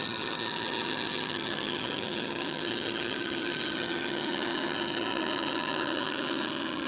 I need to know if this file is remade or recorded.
remade